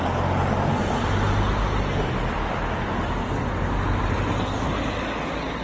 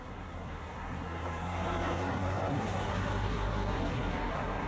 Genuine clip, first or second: first